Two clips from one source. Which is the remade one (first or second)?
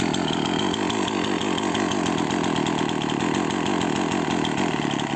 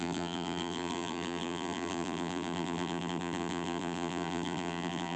second